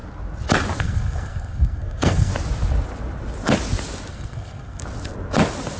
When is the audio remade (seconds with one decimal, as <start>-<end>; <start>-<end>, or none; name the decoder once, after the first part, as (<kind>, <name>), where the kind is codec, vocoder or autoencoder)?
0.8-2.3 (codec, SNAC); 4.1-4.8